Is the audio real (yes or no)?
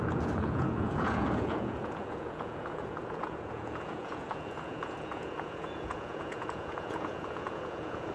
no